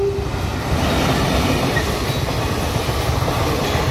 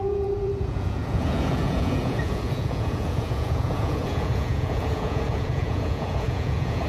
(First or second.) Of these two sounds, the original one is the first